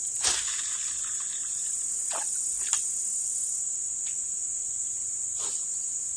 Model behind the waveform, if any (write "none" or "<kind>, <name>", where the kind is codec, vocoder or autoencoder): none